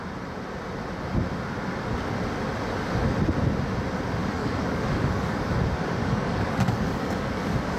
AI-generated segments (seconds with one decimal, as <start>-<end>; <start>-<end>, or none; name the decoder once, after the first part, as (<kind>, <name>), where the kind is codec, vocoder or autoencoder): 4.2-5.5 (codec, DAC); 6.0-7.8